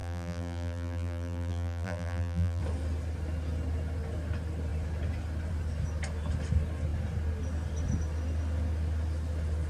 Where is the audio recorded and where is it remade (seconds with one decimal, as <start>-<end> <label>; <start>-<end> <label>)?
0.0-2.6 remade; 2.6-9.7 recorded

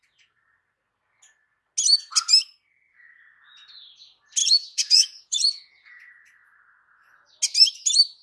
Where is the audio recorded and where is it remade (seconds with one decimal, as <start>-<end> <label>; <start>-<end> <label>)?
0.0-4.4 recorded; 4.4-6.1 remade; 6.1-8.2 recorded